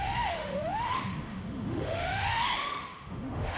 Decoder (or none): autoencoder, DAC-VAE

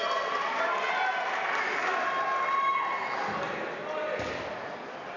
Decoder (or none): none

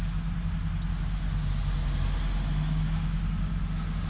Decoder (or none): none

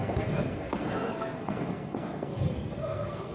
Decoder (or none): codec, SNAC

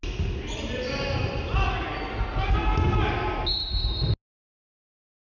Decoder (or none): none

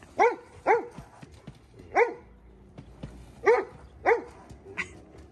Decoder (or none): none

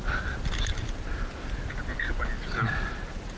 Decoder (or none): none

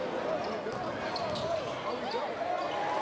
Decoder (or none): none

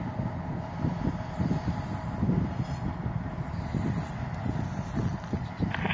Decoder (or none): none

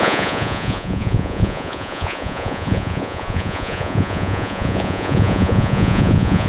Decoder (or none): vocoder, Vocos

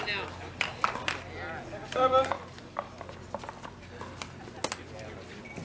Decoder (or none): none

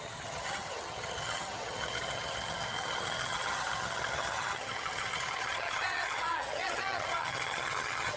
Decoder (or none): vocoder, HiFi-GAN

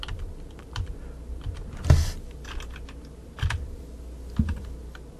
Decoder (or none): none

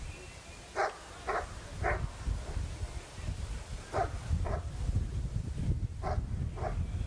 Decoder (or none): none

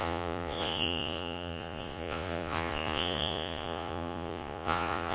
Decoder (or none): vocoder, Vocos